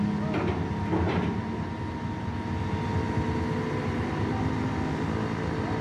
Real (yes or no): yes